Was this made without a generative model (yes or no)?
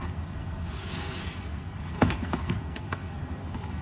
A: no